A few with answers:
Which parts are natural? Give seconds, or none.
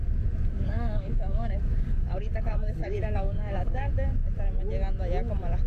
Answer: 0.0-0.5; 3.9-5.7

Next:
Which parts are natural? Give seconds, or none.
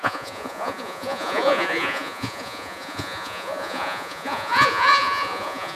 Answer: none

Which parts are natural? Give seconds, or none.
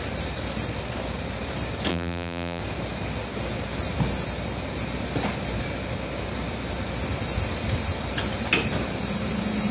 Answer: 0.0-1.9; 2.6-9.7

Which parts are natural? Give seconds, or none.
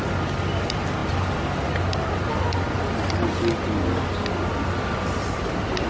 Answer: 0.0-5.9